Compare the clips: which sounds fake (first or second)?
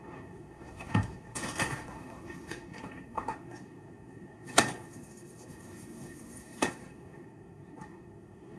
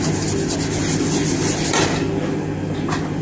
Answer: first